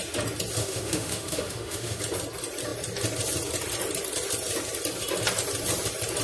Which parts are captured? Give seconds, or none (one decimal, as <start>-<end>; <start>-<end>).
0.0-0.6; 2.0-6.2